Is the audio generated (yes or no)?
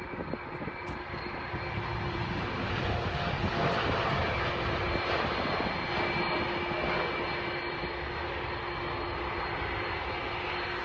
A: no